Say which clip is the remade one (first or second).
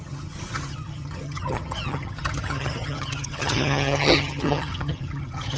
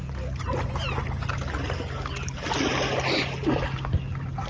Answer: first